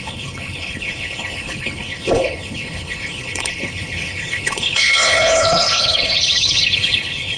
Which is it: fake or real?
fake